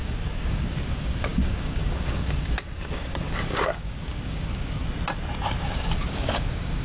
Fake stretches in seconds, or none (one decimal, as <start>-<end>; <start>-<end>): 0.0-4.8; 5.6-6.8

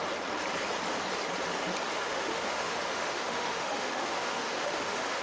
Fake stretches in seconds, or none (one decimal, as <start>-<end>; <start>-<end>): 1.9-5.2

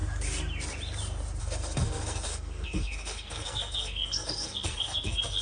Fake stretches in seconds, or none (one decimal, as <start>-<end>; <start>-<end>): 1.4-5.4

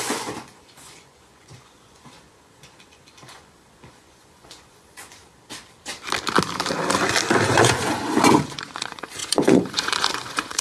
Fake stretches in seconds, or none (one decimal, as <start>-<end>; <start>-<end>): 0.0-5.2; 7.5-10.6

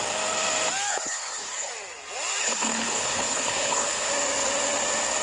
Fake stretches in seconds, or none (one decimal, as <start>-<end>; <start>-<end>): 0.9-1.7; 2.4-4.1

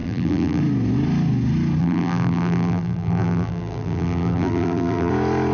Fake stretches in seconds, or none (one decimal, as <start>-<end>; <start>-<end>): 0.0-0.6; 1.8-5.1

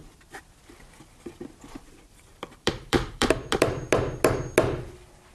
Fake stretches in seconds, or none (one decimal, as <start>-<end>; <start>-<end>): 2.3-3.8